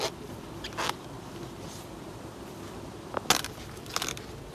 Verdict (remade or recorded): recorded